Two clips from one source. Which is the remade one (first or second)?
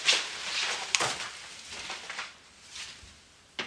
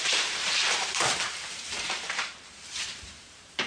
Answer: second